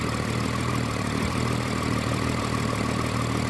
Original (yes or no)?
no